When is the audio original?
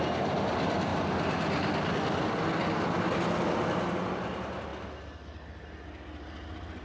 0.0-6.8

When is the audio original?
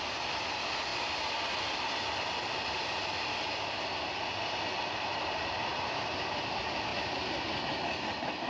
0.0-8.5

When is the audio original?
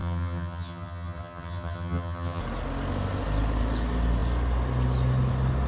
2.4-5.7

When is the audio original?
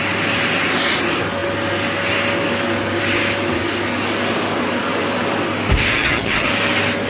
0.0-5.9; 6.5-7.1